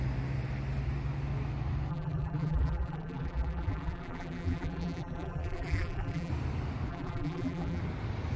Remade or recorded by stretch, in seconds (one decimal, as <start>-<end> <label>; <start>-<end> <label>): 0.0-1.9 recorded; 1.9-6.3 remade; 6.3-6.9 recorded; 6.9-7.8 remade; 7.8-8.4 recorded